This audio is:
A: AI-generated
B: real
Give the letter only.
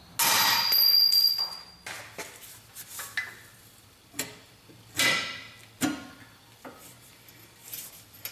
B